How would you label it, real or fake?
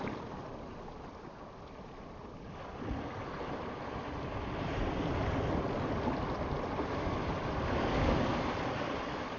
real